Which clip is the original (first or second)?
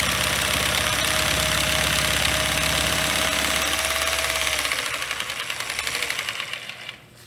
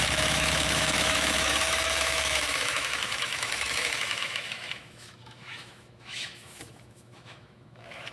first